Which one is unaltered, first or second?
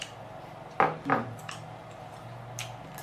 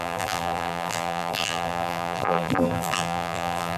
first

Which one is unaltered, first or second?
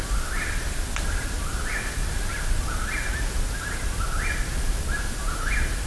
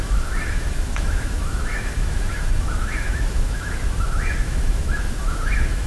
first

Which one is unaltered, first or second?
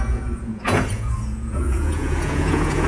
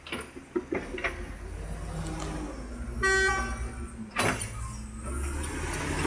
second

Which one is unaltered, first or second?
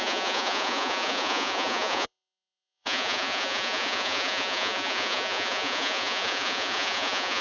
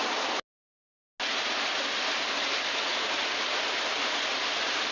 second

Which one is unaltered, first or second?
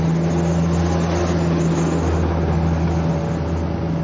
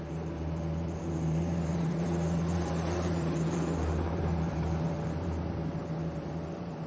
first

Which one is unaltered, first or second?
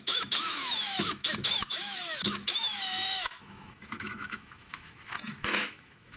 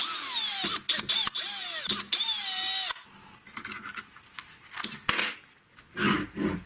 second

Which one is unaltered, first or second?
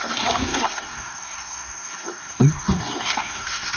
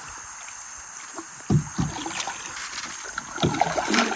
second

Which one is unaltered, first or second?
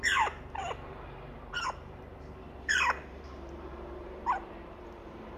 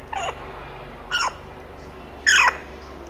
second